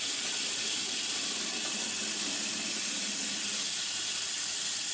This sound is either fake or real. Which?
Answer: real